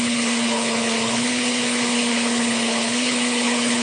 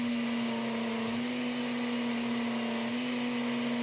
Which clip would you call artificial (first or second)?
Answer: first